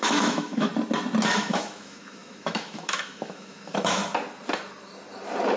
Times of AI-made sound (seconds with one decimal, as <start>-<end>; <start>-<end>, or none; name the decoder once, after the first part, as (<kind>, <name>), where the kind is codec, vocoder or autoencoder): 0.0-0.7 (autoencoder, DAC-VAE); 1.3-4.0